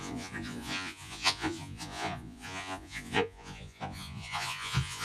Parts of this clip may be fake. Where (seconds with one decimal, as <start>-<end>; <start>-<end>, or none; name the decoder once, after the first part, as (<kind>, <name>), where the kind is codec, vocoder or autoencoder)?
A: 0.0-5.0 (vocoder, Vocos)